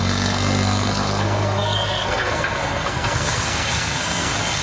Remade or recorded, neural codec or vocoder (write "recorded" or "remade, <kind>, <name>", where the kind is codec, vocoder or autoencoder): remade, codec, SNAC